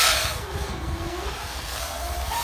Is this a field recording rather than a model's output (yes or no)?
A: no